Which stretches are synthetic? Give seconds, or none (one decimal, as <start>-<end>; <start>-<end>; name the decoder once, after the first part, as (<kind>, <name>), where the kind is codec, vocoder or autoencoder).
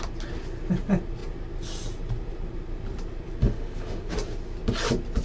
3.4-4.1 (autoencoder, DAC-VAE)